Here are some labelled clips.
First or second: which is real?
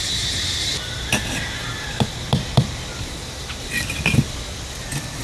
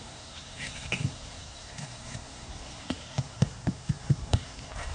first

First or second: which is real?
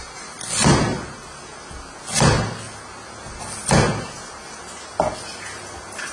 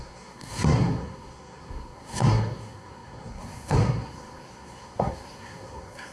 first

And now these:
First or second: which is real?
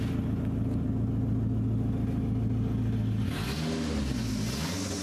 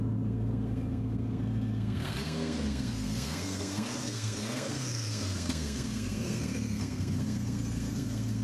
first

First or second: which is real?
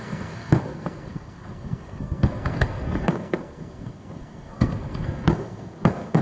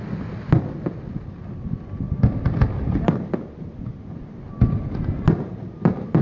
second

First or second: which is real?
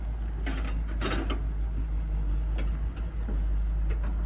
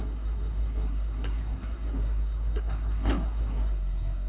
first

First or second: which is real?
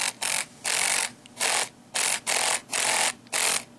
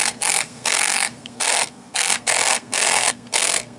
first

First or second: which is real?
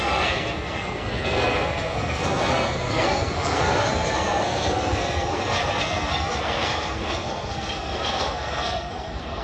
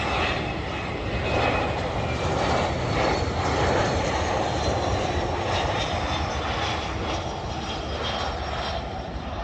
second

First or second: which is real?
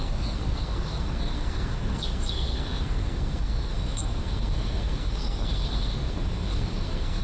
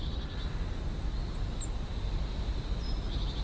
second